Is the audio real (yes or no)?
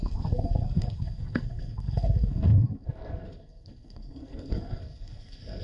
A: no